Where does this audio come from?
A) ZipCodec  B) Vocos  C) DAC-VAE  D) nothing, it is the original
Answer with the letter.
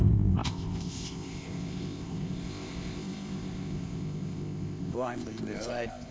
A